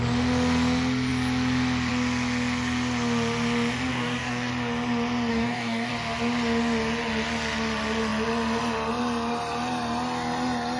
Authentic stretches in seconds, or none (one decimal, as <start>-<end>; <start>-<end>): 0.0-3.9; 4.5-5.3; 5.9-10.8

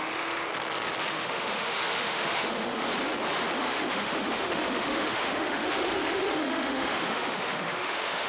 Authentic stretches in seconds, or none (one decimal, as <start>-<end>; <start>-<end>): 0.5-1.1; 2.9-3.6

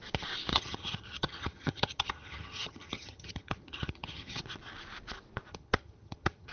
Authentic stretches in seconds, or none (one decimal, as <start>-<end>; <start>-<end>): 0.0-0.5; 4.4-5.5

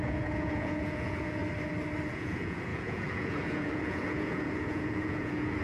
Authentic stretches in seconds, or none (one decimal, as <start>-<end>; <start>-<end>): 1.4-2.1

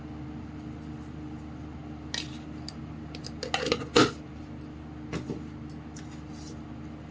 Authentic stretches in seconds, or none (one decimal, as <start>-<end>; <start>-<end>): 0.0-7.1

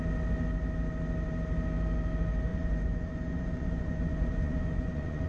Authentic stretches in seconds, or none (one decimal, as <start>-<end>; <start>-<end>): 0.0-2.5

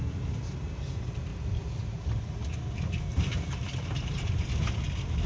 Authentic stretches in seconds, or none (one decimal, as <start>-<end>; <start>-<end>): 0.0-1.3; 4.5-5.3